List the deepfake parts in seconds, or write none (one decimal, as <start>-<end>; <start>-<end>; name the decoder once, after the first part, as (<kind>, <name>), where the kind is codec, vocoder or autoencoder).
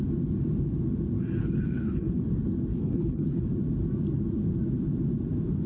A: 1.4-2.2 (codec, HILCodec); 2.7-3.5